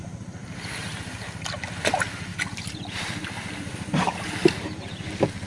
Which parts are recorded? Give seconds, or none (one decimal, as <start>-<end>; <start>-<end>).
0.0-0.4; 1.0-2.3; 3.9-5.5

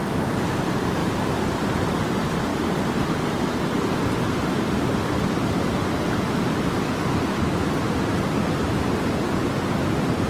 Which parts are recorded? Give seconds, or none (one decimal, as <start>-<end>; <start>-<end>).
0.0-1.0; 1.9-2.5; 3.6-5.8; 6.7-10.3

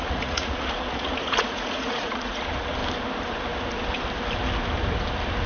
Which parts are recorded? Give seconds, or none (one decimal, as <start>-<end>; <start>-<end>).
2.8-5.5

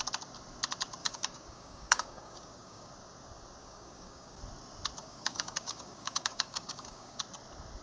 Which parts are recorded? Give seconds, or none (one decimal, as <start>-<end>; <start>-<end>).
0.0-1.0; 2.9-3.6; 4.4-5.0; 7.2-7.8

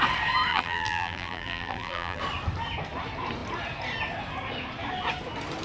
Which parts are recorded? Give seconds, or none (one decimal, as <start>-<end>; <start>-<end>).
0.0-0.5; 2.2-5.6

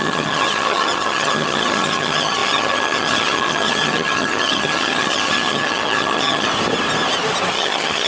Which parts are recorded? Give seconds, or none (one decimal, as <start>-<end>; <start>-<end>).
6.5-7.5

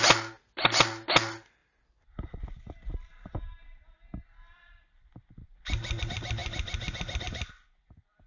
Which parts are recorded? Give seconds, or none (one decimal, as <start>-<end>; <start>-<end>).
0.0-8.3

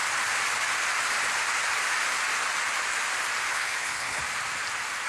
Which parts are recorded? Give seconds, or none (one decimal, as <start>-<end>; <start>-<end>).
0.0-3.5; 4.2-5.1